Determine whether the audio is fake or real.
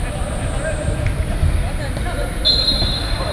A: real